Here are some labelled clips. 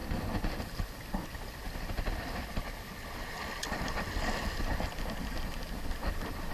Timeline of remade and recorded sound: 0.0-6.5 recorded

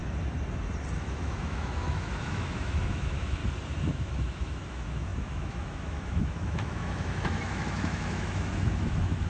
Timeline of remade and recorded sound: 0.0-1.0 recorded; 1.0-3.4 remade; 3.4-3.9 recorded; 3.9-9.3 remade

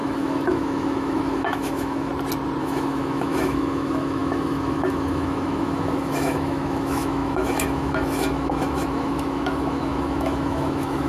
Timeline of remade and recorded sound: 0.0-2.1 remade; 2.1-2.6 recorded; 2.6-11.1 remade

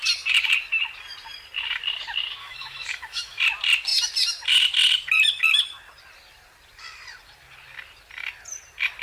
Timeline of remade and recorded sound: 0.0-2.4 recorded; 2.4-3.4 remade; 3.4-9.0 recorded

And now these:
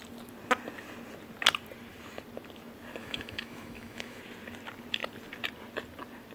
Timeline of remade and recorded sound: 0.0-3.0 recorded; 3.0-4.2 remade; 4.2-6.3 recorded

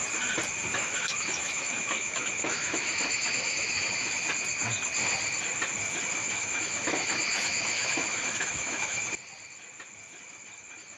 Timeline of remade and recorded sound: 0.0-0.7 recorded; 0.7-4.3 remade; 4.3-6.2 recorded; 6.2-9.0 remade; 9.0-11.0 recorded